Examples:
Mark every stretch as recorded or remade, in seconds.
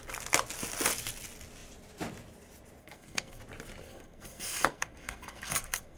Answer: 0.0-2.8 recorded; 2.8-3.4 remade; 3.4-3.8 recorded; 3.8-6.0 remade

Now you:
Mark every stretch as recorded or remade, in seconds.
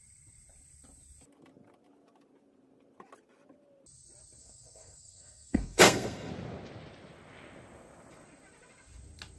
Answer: 0.0-4.4 recorded; 4.4-6.3 remade; 6.3-9.4 recorded